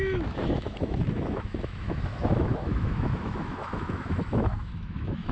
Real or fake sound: fake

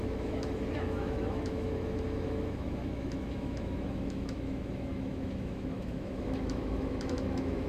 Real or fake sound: fake